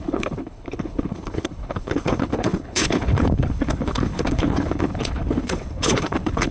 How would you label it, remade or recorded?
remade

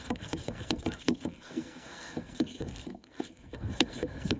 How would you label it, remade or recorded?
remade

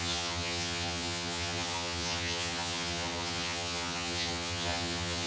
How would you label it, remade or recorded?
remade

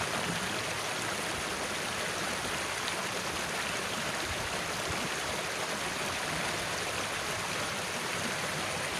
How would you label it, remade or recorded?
recorded